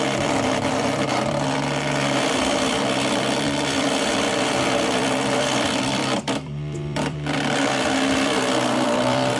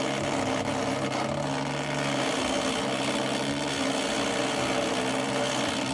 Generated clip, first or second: first